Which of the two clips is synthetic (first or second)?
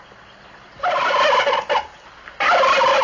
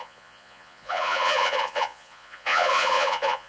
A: second